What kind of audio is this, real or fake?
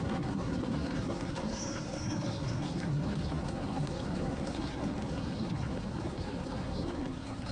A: fake